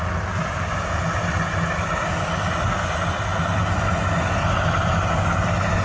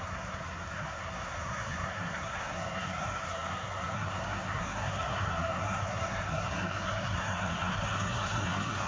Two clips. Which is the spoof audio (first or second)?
second